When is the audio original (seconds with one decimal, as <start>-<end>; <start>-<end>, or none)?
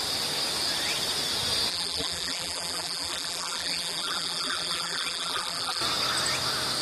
0.0-1.7; 5.8-6.8